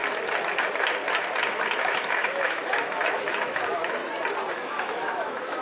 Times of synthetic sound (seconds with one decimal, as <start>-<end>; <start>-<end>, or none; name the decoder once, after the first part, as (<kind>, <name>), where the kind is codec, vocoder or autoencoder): 1.8-4.0 (autoencoder, DAC-VAE); 4.5-5.6

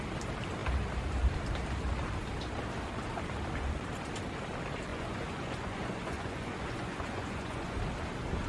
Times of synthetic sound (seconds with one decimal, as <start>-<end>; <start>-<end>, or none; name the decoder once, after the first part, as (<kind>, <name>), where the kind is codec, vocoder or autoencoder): 4.9-7.8 (vocoder, Vocos)